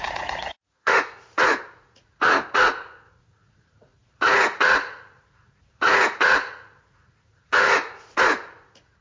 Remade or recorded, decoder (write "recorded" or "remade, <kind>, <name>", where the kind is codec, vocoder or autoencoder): remade, vocoder, Vocos